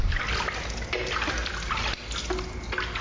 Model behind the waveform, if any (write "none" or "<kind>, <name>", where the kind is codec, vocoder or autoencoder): none